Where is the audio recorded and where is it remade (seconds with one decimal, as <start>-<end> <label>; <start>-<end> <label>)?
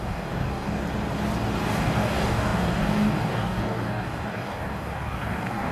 0.0-0.8 remade; 0.8-1.7 recorded; 1.7-5.7 remade